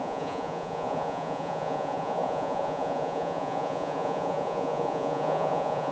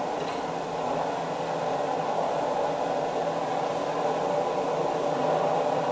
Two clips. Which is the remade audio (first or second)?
first